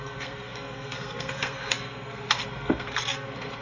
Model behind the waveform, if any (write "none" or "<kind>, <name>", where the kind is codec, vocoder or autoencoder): codec, SNAC